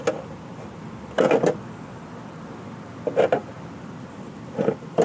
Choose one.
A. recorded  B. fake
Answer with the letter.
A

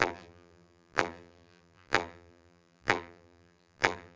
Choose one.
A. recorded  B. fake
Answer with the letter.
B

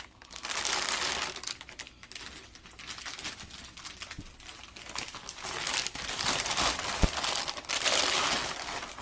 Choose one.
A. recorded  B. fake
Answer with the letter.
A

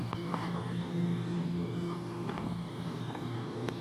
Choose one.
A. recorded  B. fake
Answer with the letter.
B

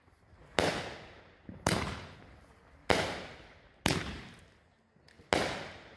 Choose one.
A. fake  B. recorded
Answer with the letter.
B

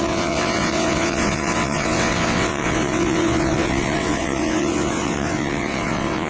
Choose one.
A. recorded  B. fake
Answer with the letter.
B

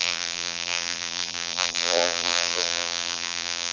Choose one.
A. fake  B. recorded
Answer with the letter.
A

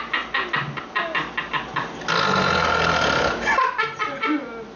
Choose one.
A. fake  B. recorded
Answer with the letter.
B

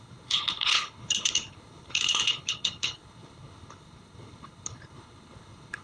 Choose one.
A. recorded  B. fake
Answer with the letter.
B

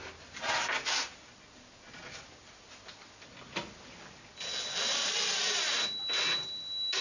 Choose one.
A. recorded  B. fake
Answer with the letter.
A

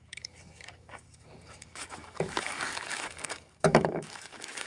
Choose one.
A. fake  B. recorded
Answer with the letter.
A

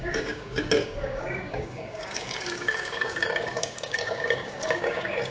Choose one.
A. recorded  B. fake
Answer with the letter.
B